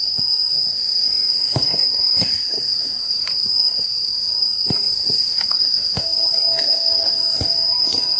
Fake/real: fake